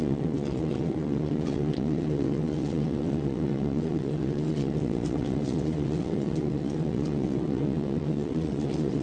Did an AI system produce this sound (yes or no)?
yes